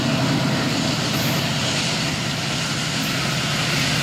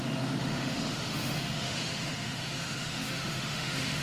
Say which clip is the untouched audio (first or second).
first